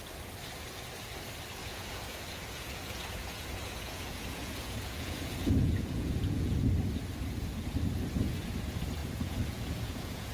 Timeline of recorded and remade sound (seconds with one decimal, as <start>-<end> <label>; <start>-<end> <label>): 0.0-1.6 recorded; 1.6-6.7 remade; 6.7-9.0 recorded; 9.0-10.3 remade